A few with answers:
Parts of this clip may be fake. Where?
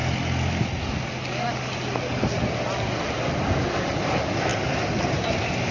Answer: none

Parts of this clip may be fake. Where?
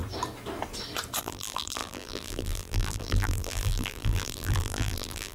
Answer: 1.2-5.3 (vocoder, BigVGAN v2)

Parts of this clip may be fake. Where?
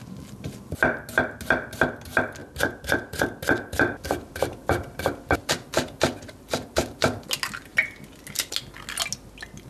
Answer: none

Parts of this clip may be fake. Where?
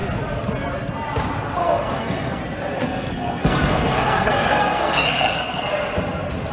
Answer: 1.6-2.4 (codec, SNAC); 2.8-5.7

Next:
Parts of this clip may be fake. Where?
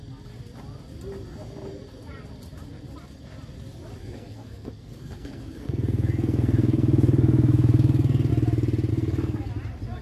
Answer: 4.0-8.3 (codec, SNAC); 8.9-9.5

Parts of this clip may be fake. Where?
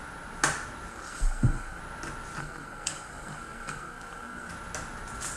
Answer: 0.9-1.8 (codec, SNAC); 2.4-4.5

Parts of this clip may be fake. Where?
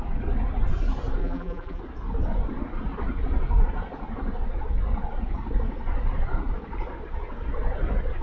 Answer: 1.2-1.8 (vocoder, BigVGAN v2)